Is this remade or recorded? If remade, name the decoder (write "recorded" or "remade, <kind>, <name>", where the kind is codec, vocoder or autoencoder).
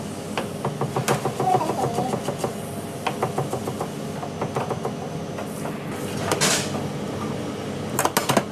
recorded